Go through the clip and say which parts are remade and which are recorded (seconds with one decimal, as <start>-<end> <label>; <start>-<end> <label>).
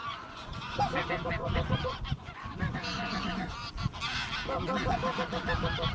0.0-0.8 remade; 0.8-1.4 recorded; 1.4-3.7 remade; 3.7-5.9 recorded